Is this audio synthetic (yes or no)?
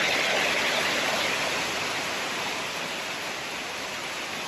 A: no